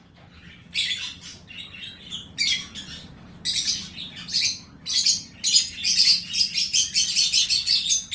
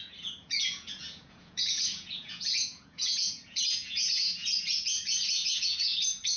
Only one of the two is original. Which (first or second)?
first